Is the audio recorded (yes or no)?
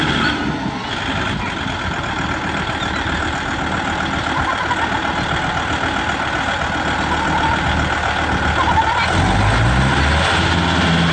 yes